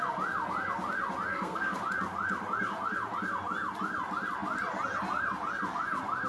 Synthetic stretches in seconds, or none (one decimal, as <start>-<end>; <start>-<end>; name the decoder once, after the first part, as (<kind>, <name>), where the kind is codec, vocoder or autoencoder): 1.3-1.8 (codec, SNAC)